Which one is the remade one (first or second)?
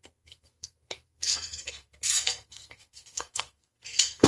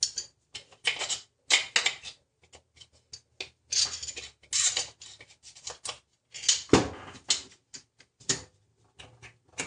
first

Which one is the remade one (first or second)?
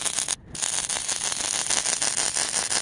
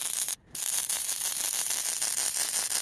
second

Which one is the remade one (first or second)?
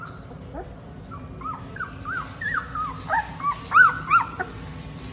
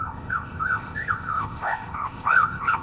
second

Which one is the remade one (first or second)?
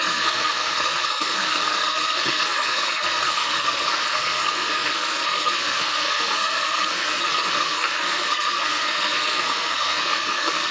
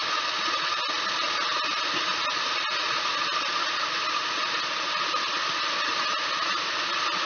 first